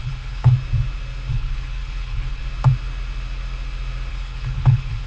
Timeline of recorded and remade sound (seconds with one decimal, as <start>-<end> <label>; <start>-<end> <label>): 0.0-0.5 remade; 0.5-1.3 recorded; 1.3-2.4 remade; 2.4-4.1 recorded; 4.1-5.1 remade